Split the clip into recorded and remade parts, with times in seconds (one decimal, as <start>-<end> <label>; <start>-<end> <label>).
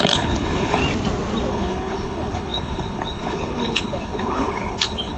0.0-0.8 remade; 0.8-1.5 recorded; 1.5-5.2 remade